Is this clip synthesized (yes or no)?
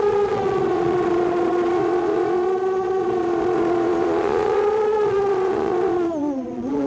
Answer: yes